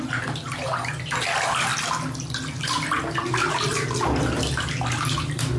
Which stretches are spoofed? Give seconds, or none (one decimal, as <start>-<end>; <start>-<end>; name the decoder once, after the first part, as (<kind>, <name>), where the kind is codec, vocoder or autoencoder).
none